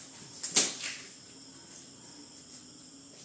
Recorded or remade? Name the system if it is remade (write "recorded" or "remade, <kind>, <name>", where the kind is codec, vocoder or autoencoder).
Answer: recorded